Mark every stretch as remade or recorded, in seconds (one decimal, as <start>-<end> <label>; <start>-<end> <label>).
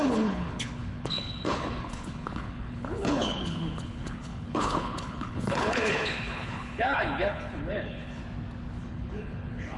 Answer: 0.0-8.2 remade; 8.2-8.8 recorded; 8.8-9.8 remade